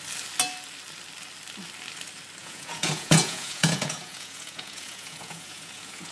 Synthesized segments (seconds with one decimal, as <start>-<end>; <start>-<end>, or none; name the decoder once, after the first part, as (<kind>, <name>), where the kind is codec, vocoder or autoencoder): 2.4-6.1 (vocoder, Vocos)